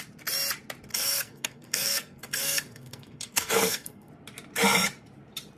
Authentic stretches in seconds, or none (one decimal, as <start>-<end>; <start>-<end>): 0.0-0.9; 4.1-5.6